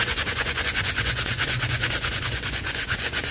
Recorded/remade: remade